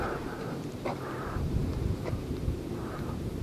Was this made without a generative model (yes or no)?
no